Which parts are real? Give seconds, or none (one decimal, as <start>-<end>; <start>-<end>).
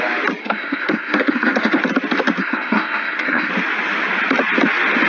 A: 0.0-0.4; 1.8-2.4; 3.5-5.1